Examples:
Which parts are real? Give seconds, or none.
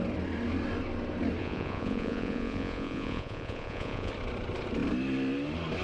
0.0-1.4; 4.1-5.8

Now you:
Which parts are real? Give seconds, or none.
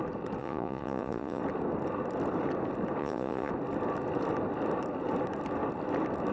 0.0-0.4; 1.4-3.0; 3.5-6.3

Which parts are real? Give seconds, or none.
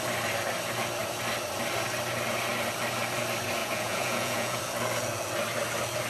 0.0-3.6; 4.6-6.1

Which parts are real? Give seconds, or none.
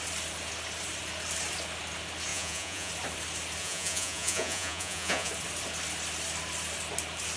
0.0-2.3; 2.9-3.6; 5.3-7.4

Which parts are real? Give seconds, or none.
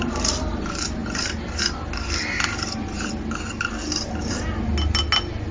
0.0-5.5